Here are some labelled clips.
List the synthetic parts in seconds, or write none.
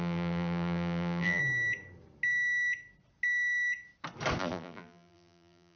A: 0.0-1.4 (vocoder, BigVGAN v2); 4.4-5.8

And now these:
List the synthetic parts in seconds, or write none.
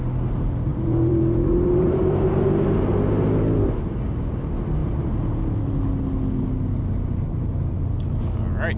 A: 0.7-2.9 (vocoder, BigVGAN v2)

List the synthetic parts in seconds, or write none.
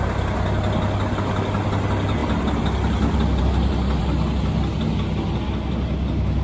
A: 2.2-3.4 (vocoder, BigVGAN v2)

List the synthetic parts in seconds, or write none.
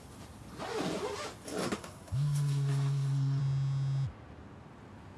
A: 1.6-3.4 (codec, SNAC)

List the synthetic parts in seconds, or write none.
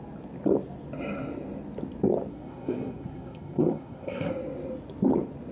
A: 2.3-4.3 (codec, SNAC)